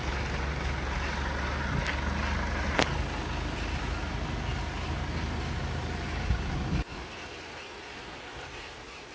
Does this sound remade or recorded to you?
recorded